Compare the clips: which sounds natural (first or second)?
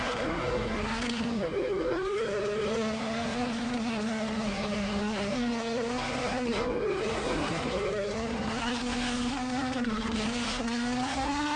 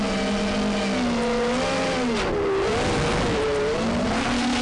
second